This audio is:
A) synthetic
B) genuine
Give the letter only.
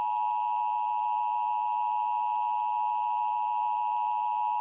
B